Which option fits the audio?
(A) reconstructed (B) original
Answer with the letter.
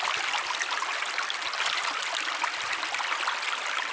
B